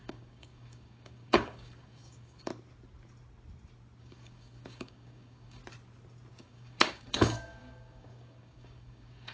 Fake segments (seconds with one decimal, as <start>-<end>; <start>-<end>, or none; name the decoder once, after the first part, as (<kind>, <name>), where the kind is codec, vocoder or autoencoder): 0.0-2.5 (codec, DAC); 4.0-5.6; 6.3-9.3